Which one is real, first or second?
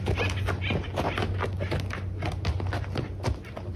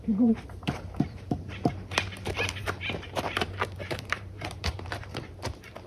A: first